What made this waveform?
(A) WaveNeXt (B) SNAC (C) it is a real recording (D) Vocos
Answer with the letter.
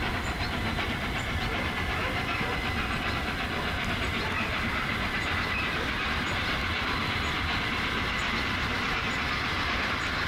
C